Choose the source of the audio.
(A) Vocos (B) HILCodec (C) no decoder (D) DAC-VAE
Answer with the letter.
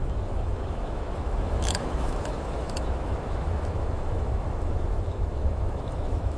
D